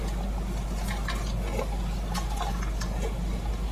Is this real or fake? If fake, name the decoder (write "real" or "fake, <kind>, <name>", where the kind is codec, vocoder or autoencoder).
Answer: real